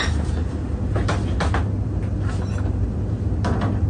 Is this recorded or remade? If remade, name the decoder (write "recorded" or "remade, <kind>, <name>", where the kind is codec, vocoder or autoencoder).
recorded